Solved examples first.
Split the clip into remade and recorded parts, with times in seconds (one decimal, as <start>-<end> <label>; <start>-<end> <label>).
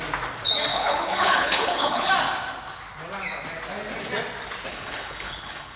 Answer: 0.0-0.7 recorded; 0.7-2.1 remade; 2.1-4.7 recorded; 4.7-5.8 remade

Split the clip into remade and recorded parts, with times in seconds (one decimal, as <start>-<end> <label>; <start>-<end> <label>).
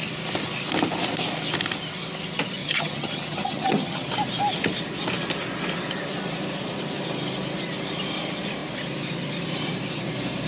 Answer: 0.0-2.6 recorded; 2.6-4.1 remade; 4.1-10.5 recorded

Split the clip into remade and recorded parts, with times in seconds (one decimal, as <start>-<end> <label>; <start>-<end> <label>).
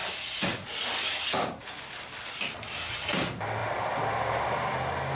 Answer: 0.0-5.1 recorded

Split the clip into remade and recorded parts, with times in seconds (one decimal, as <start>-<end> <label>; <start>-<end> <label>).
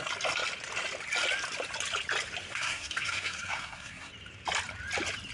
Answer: 0.0-2.5 recorded; 2.5-4.1 remade; 4.1-5.3 recorded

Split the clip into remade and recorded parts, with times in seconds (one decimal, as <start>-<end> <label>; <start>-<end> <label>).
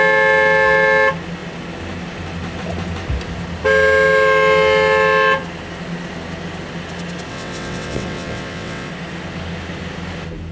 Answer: 0.0-7.3 recorded; 7.3-8.9 remade; 8.9-10.5 recorded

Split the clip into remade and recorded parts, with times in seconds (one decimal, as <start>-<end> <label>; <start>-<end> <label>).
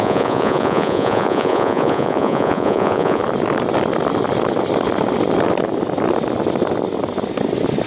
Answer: 0.0-3.2 remade; 3.2-7.9 recorded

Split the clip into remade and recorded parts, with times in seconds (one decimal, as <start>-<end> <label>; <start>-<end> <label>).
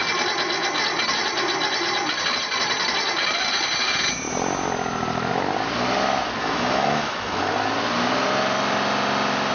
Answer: 0.0-6.4 recorded; 6.4-7.5 remade; 7.5-9.5 recorded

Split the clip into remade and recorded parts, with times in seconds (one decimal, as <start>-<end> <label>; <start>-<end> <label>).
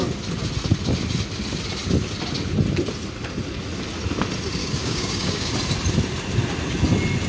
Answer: 0.0-4.6 recorded; 4.6-5.5 remade; 5.5-7.3 recorded